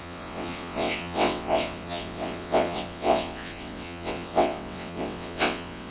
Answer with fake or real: fake